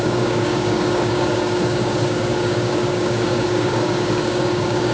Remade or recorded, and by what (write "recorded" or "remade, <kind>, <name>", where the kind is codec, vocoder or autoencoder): remade, codec, DAC